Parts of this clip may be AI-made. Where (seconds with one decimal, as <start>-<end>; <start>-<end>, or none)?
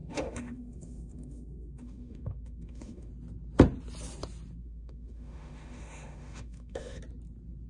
0.0-3.1; 4.6-7.0